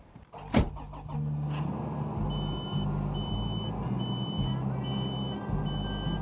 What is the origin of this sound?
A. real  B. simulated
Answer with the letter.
A